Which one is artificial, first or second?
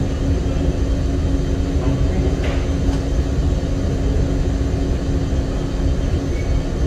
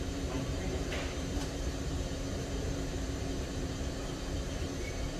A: second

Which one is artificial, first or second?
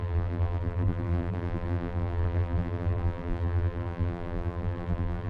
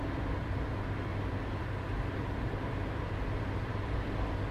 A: first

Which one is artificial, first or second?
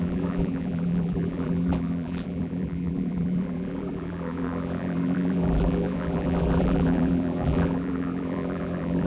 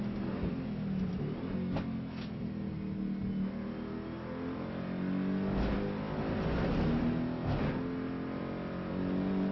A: first